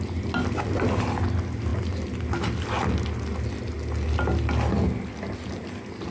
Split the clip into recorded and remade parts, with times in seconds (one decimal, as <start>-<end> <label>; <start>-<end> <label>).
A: 0.0-6.1 recorded